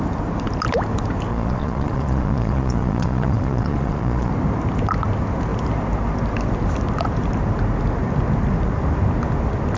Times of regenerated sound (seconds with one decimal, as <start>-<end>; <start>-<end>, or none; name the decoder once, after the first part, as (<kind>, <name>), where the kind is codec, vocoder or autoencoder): 1.3-4.3 (vocoder, Vocos)